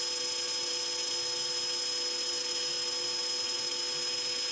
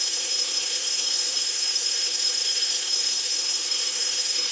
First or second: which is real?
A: first